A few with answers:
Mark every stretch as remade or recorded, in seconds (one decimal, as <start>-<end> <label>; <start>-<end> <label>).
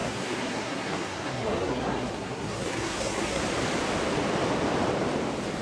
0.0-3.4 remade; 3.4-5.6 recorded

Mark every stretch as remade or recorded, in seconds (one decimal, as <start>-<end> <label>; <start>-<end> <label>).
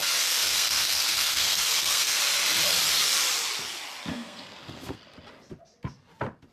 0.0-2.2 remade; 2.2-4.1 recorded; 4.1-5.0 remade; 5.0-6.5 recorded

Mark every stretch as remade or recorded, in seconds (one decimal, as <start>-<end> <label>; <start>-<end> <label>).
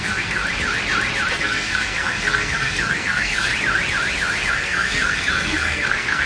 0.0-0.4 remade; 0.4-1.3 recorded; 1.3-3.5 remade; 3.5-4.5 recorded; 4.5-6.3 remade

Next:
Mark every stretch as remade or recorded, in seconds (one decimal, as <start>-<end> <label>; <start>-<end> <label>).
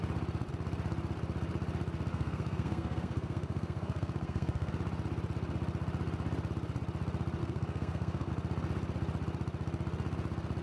0.0-2.1 recorded; 2.1-4.7 remade; 4.7-7.4 recorded; 7.4-8.3 remade; 8.3-10.6 recorded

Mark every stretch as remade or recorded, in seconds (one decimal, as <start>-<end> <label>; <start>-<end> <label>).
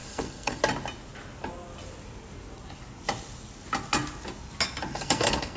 0.0-0.6 remade; 0.6-4.9 recorded; 4.9-5.6 remade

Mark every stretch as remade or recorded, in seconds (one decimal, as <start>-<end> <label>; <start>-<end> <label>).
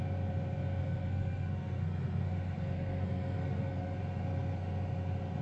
0.0-0.8 recorded; 0.8-4.0 remade; 4.0-5.4 recorded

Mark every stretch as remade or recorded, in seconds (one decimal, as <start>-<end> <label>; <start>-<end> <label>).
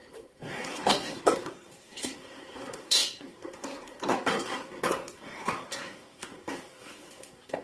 0.0-7.6 remade